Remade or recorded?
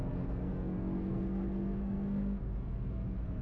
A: remade